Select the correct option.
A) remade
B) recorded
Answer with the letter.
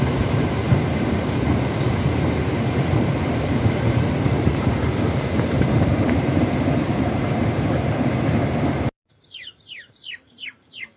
A